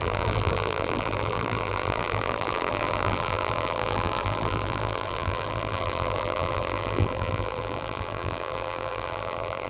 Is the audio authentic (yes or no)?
no